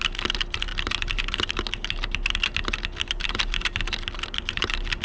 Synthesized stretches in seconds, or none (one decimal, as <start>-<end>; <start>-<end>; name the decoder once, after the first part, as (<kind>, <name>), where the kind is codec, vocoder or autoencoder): none